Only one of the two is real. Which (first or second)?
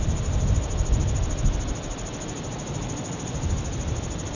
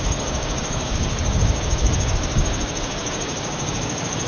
first